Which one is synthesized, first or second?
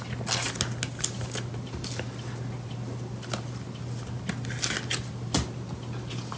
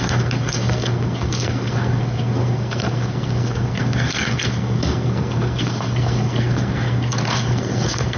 second